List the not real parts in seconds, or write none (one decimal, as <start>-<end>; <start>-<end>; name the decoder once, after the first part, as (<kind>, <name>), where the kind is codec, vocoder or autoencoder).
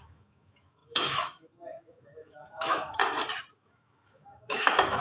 0.0-3.0 (autoencoder, DAC-VAE); 3.5-5.0